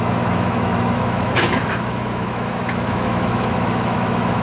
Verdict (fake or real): fake